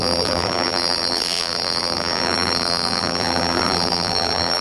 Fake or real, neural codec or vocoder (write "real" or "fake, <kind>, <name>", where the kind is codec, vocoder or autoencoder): fake, vocoder, BigVGAN v2